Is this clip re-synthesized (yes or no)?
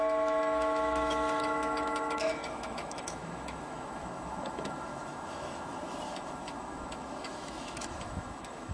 yes